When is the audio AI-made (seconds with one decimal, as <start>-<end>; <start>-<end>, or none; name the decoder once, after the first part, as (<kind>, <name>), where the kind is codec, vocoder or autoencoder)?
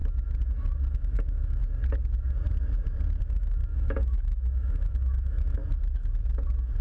0.9-1.6 (autoencoder, DAC-VAE); 3.2-5.6